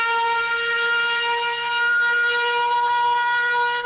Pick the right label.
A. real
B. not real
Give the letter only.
A